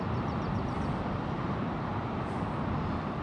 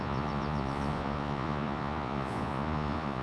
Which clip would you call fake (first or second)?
second